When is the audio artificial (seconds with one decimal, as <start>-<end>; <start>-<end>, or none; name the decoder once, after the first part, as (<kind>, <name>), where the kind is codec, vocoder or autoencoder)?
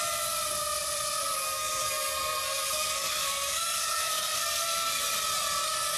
1.4-5.0 (codec, SNAC)